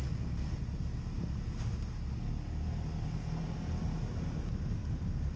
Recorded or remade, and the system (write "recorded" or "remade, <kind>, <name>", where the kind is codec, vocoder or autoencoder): recorded